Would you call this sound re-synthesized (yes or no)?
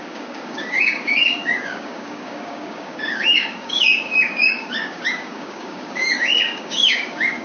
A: yes